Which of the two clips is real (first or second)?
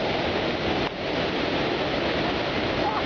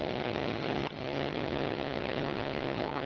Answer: first